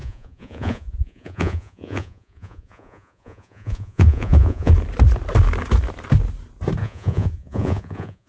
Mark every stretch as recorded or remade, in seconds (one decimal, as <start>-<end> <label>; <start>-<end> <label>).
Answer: 0.0-4.7 remade; 4.7-6.8 recorded; 6.8-8.3 remade